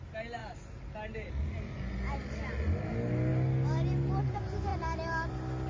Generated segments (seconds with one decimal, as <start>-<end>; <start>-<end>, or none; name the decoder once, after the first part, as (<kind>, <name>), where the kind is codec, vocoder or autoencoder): none